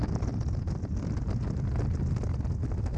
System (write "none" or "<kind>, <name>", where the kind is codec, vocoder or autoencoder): none